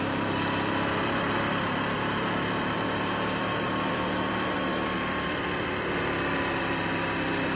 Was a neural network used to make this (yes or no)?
yes